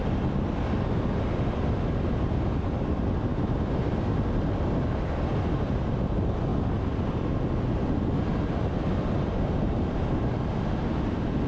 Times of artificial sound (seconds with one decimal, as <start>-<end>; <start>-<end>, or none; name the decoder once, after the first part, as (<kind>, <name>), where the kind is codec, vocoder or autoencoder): none